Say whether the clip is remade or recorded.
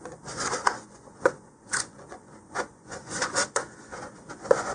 remade